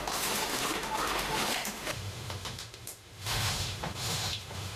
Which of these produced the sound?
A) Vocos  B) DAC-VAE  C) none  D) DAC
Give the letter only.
B